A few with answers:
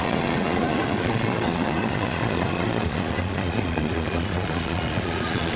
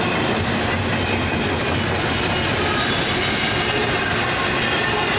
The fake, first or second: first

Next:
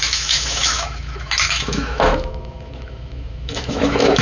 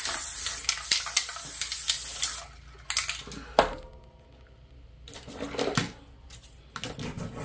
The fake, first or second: first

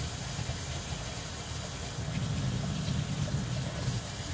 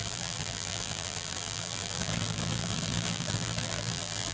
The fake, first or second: second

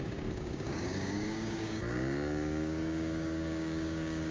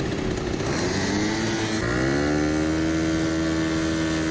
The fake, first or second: first